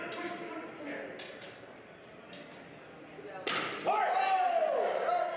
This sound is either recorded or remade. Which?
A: recorded